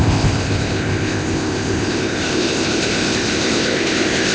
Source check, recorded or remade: remade